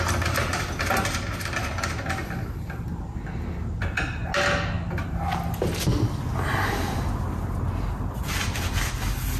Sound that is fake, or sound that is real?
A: real